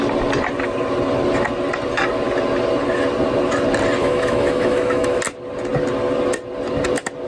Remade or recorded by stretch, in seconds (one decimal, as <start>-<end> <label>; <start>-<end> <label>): 0.0-4.0 recorded; 4.0-5.2 remade; 5.2-7.3 recorded